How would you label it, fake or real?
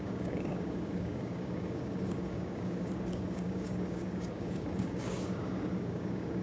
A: fake